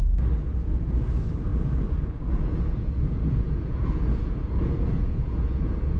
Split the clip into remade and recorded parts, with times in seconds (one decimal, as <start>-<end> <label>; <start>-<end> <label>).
0.0-0.7 recorded; 0.7-6.0 remade